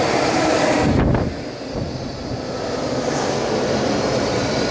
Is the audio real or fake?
real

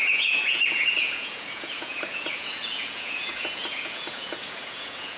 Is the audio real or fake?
fake